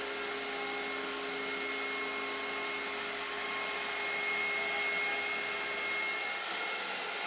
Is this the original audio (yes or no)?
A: yes